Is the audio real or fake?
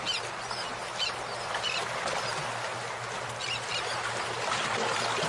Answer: real